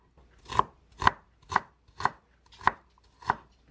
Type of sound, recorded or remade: recorded